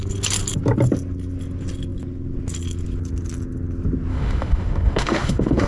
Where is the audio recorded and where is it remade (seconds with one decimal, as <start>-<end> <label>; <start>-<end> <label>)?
0.0-4.1 recorded; 4.1-5.7 remade